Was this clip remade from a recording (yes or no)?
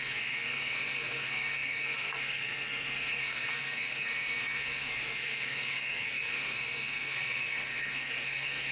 yes